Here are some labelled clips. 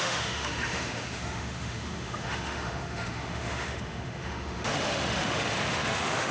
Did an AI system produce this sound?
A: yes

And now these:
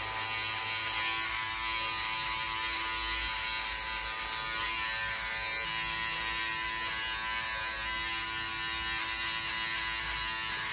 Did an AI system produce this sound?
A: no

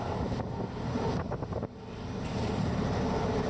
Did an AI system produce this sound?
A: yes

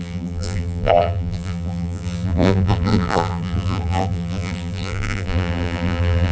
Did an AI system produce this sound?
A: yes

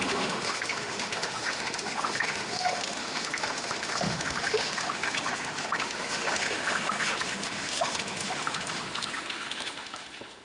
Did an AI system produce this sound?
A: yes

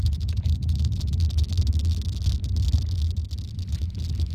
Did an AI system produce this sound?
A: no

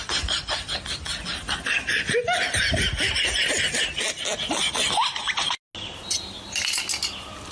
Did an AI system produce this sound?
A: no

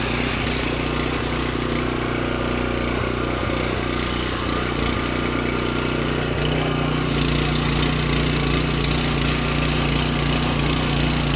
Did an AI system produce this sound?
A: no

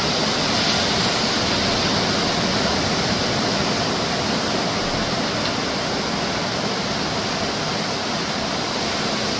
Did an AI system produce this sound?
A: no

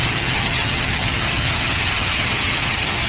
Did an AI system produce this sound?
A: yes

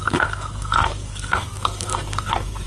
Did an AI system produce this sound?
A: yes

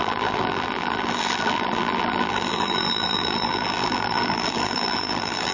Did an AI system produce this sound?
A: yes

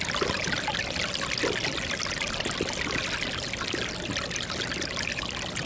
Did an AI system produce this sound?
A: no